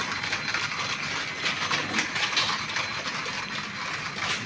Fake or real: real